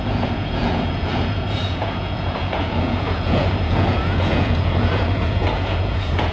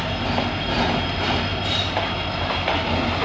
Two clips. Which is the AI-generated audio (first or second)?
first